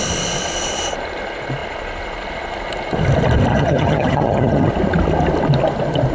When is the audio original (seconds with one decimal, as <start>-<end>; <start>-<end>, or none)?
0.0-3.5; 4.7-6.1